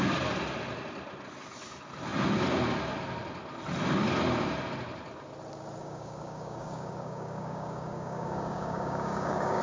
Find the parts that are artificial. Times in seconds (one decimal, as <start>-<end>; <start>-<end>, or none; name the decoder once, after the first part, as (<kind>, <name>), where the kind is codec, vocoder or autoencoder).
5.8-9.6 (codec, DAC)